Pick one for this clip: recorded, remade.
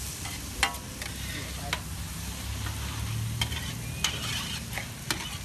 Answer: recorded